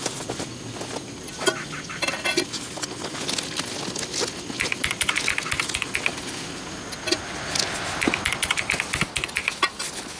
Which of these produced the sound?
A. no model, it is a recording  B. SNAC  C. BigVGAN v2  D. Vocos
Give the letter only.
A